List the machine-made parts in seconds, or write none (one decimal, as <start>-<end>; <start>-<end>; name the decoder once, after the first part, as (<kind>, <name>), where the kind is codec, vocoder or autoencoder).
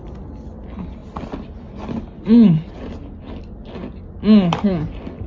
none